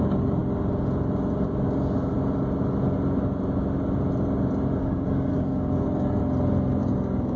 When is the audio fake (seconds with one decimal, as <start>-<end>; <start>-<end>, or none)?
0.0-0.4; 4.8-6.2; 6.8-7.4